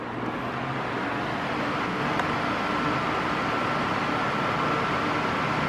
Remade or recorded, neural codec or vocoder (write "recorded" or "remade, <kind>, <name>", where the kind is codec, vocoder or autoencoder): recorded